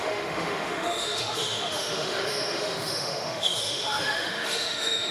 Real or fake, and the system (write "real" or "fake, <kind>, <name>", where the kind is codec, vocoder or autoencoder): fake, autoencoder, DAC-VAE